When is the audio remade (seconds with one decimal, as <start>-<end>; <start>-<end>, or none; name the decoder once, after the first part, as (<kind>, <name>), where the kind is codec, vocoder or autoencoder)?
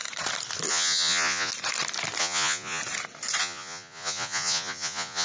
0.7-1.5 (vocoder, Vocos); 2.2-2.8; 3.4-5.2